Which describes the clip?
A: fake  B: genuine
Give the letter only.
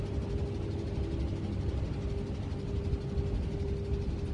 B